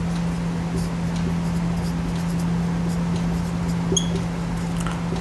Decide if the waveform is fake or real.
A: real